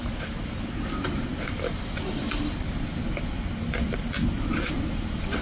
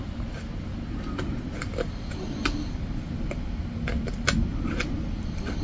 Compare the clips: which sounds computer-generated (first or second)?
first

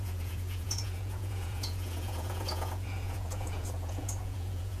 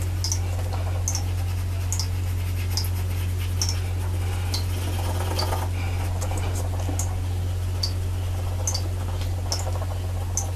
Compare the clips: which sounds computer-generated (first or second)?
first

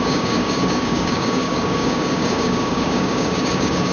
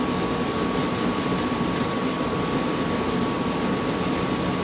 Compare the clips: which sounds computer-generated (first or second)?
first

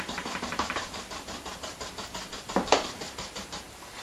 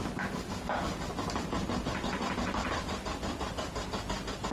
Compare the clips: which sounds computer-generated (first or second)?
first